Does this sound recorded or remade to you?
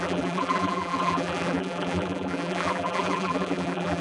remade